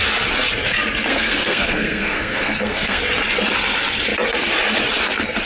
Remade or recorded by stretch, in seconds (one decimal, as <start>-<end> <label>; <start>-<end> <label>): 0.0-1.1 recorded; 1.1-3.0 remade; 3.0-5.5 recorded